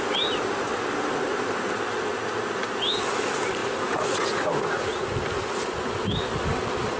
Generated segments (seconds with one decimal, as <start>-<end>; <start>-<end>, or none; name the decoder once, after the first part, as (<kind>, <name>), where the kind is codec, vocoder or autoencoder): 3.6-5.1 (vocoder, Vocos)